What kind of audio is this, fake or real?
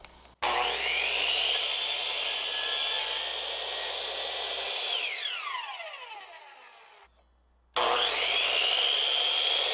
real